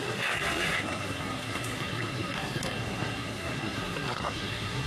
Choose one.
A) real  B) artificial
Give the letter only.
B